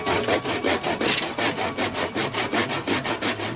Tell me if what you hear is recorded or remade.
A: recorded